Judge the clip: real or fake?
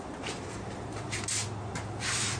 real